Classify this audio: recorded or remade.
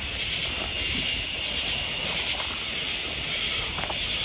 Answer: recorded